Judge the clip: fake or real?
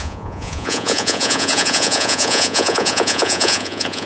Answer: fake